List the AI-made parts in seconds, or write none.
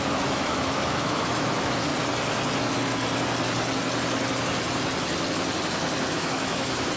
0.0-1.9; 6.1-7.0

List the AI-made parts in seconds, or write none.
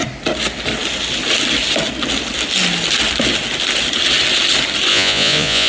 4.9-5.7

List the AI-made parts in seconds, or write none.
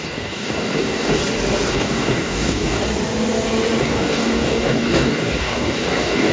0.0-1.2; 1.7-2.8; 3.8-6.3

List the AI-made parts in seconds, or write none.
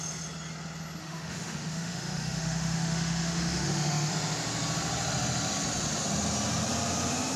1.0-4.1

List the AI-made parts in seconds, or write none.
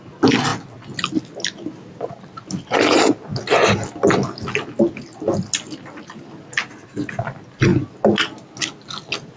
none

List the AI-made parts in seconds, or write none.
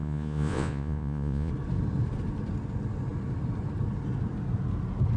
0.0-1.5